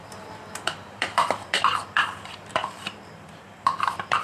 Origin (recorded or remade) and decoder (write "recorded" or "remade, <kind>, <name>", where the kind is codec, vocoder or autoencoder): remade, vocoder, BigVGAN v2